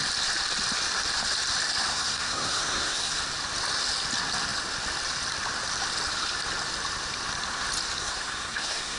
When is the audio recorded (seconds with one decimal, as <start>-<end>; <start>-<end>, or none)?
0.0-1.9; 3.2-8.0